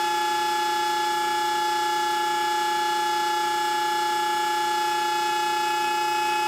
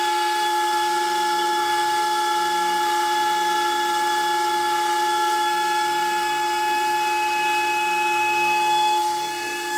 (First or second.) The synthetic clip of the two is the second